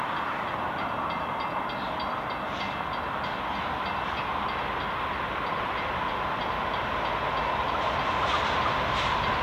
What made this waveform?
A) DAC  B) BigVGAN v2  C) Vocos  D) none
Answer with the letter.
D